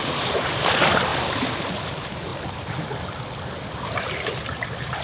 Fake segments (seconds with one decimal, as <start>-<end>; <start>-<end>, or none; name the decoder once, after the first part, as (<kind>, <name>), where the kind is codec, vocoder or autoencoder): 0.0-1.1 (vocoder, BigVGAN v2); 1.7-2.3; 4.0-5.0